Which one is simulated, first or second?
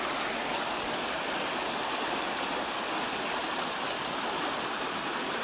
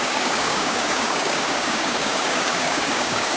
second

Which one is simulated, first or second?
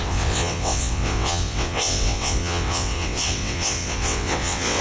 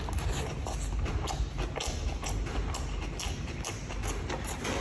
first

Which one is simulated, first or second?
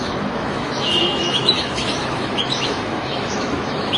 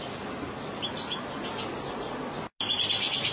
first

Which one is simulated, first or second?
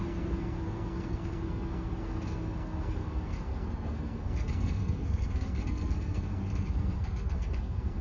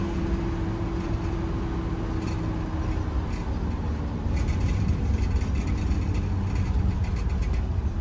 first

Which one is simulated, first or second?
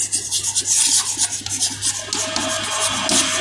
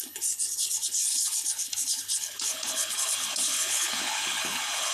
second